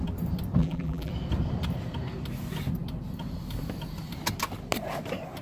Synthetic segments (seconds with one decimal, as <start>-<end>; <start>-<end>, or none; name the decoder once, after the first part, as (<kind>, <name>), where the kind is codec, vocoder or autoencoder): 0.6-1.1 (vocoder, BigVGAN v2)

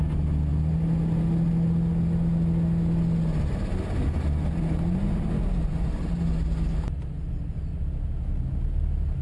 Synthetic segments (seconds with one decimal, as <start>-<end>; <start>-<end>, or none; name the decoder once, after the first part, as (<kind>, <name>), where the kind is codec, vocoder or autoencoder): none

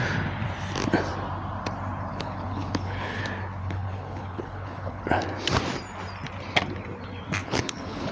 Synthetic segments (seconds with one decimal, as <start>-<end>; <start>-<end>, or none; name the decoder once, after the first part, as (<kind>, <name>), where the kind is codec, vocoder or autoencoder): 2.1-3.2 (codec, HILCodec); 3.6-5.2; 7.4-8.1

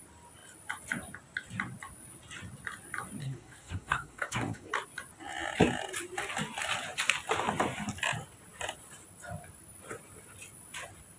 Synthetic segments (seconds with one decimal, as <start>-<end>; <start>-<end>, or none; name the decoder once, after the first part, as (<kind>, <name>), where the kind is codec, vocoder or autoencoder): 3.2-4.7 (codec, SNAC)

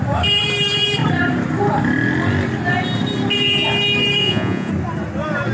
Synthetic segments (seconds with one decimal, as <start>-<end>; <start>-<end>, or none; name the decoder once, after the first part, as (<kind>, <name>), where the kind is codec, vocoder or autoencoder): 4.2-4.7 (vocoder, Vocos)